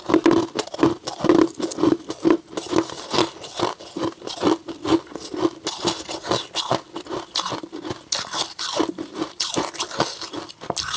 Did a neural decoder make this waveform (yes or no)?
no